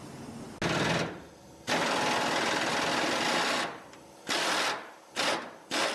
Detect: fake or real real